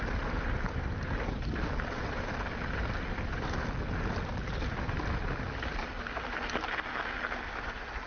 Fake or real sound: real